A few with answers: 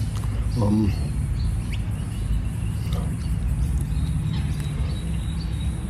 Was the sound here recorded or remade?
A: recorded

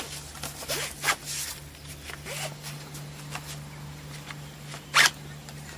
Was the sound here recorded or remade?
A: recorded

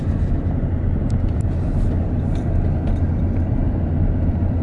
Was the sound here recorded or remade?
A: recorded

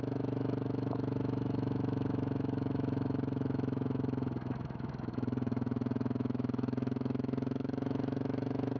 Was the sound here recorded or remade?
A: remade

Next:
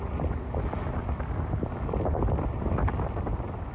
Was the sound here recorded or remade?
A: recorded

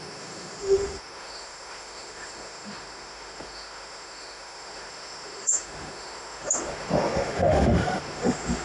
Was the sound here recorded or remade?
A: remade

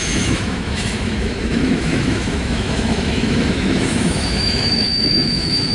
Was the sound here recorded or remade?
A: remade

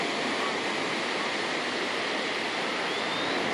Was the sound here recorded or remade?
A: recorded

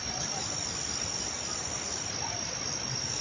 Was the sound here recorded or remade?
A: recorded